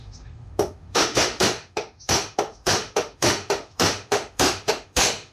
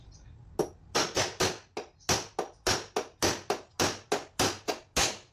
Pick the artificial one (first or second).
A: first